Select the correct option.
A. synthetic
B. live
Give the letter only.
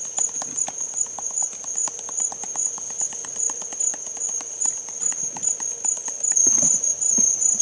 B